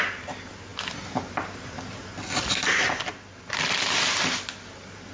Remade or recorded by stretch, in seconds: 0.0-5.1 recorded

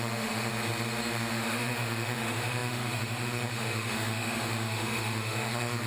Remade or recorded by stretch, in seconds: 0.0-0.5 remade; 0.5-1.3 recorded; 1.3-5.9 remade

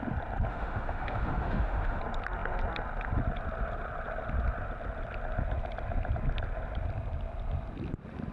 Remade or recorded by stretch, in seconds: 0.0-0.5 recorded; 0.5-2.0 remade; 2.0-8.3 recorded

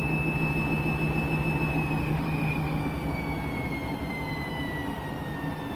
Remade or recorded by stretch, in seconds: 0.0-2.0 recorded; 2.0-2.8 remade; 2.8-5.8 recorded